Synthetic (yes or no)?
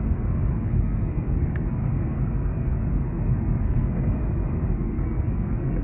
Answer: yes